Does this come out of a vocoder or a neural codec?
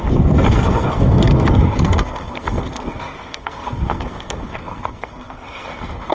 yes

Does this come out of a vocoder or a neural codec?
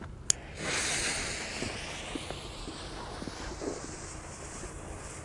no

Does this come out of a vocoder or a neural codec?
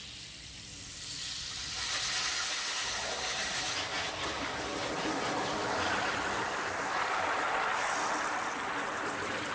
no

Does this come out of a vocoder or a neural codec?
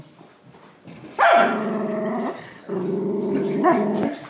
no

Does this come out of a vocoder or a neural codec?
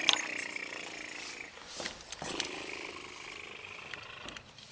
no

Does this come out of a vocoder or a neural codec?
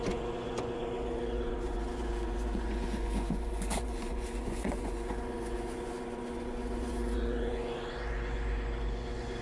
yes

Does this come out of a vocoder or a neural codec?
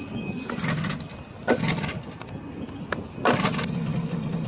no